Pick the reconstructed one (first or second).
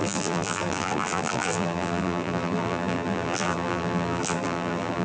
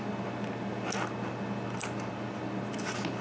first